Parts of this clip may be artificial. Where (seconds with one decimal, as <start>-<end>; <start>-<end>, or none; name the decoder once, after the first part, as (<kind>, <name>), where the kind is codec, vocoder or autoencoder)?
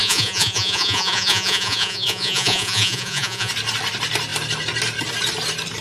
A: 0.0-3.5 (vocoder, Vocos)